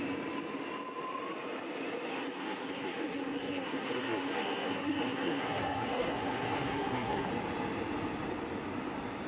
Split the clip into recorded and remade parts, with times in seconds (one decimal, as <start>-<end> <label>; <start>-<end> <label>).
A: 0.0-2.1 recorded; 2.1-7.3 remade; 7.3-9.3 recorded